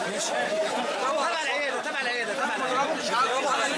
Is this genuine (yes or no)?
yes